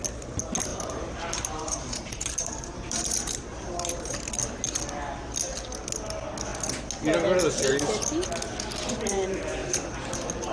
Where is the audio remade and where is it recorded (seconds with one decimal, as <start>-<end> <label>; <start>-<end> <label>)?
0.0-0.7 recorded; 0.7-4.2 remade; 4.2-10.5 recorded